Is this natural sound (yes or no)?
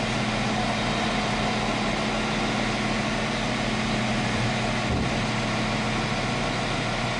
yes